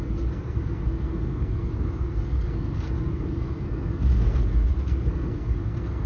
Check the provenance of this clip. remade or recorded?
remade